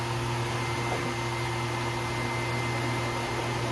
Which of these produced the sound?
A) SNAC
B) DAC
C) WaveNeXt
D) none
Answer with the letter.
D